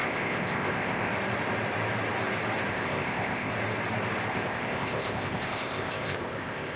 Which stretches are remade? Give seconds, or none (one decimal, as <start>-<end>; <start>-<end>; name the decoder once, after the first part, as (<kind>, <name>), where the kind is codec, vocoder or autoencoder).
0.0-1.1 (codec, ZipCodec); 2.7-3.5; 4.3-6.8